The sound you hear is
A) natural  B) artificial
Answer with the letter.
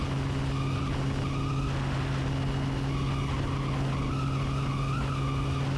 A